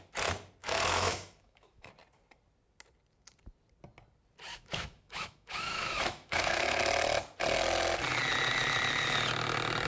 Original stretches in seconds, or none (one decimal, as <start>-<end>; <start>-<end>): 0.0-0.6; 1.9-4.5; 6.8-9.9